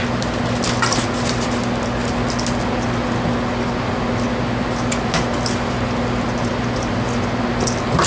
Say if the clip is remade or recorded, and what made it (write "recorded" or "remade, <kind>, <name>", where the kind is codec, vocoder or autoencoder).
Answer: recorded